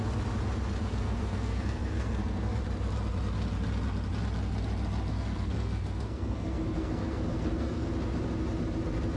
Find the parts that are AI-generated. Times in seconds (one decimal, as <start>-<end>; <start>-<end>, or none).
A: 0.9-2.6; 5.1-7.9